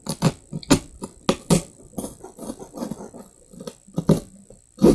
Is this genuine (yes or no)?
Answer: yes